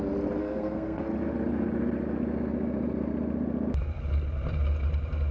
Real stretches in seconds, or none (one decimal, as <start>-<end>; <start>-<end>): 0.0-0.4; 1.0-5.3